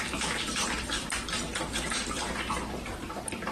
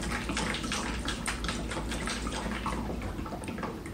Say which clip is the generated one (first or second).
first